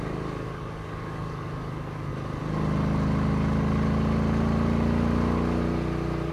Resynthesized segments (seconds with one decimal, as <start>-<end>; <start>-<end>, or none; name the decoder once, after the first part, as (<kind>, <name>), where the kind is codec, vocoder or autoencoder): 0.0-2.1 (codec, DAC)